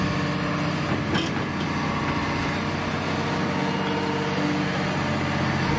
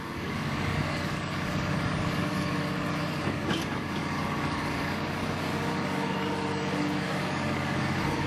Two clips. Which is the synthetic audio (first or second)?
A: second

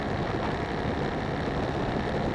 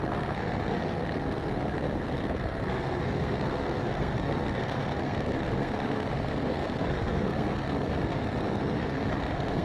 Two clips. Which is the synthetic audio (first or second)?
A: second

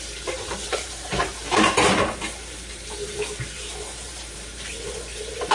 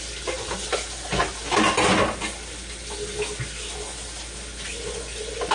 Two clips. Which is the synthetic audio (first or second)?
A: first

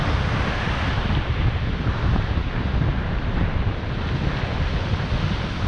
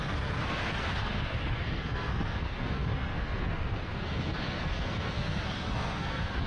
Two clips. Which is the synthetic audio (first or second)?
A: second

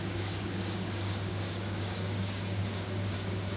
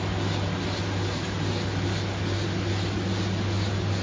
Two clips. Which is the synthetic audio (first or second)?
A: first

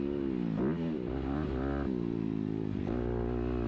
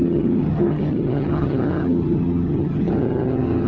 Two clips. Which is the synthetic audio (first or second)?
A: second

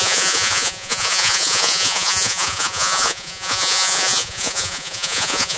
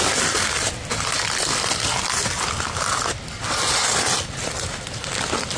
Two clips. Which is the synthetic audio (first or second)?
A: first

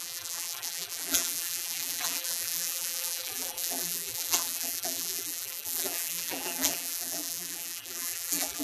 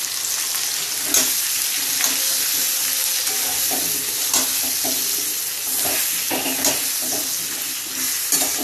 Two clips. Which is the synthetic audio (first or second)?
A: first